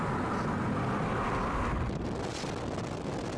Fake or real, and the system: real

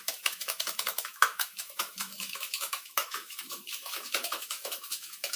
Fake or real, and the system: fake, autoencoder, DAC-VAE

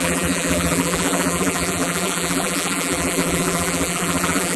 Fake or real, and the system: fake, vocoder, BigVGAN v2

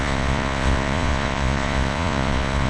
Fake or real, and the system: fake, vocoder, Vocos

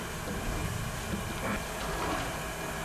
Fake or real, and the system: real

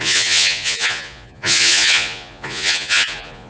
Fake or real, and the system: fake, vocoder, Vocos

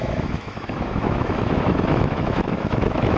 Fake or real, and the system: fake, autoencoder, DAC-VAE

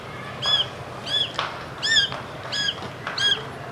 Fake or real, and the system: real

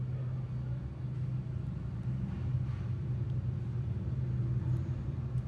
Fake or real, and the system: real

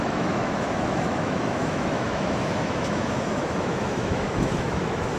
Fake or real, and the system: fake, autoencoder, DAC-VAE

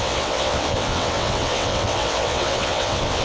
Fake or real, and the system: fake, vocoder, WaveNeXt